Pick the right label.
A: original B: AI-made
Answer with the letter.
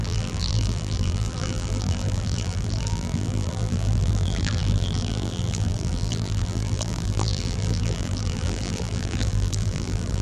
B